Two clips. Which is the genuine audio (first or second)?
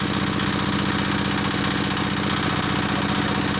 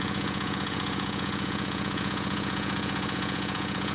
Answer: first